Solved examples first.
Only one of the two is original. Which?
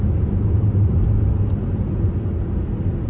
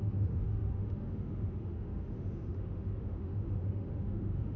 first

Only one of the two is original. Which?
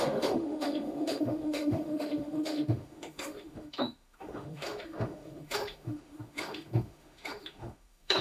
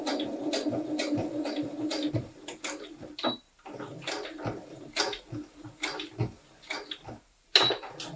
second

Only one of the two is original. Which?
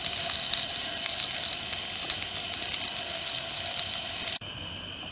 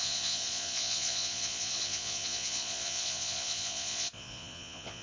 first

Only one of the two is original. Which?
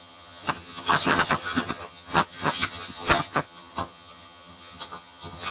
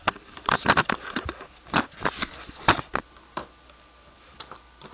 second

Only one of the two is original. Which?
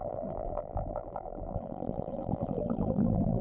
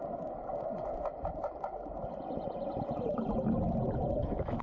second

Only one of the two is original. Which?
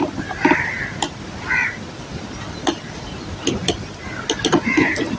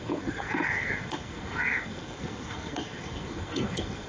first